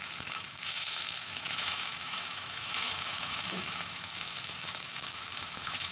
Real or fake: fake